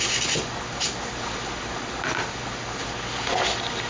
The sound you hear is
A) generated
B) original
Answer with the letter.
B